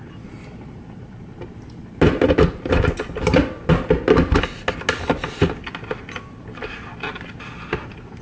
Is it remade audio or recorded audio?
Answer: recorded